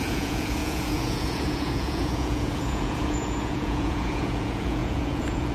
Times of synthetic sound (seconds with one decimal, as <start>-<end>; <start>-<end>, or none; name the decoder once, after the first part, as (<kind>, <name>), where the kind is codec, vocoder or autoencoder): 0.0-5.5 (vocoder, Vocos)